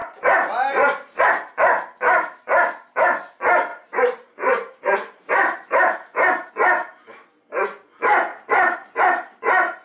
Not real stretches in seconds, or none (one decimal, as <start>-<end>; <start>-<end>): 0.0-1.2; 3.7-6.5; 8.3-9.0